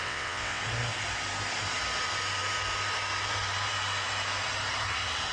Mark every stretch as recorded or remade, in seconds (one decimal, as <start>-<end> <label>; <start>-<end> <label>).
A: 0.0-0.6 remade; 0.6-5.3 recorded